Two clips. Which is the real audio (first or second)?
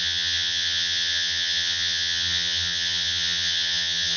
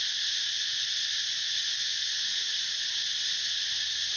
second